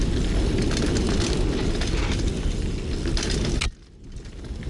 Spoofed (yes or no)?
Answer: no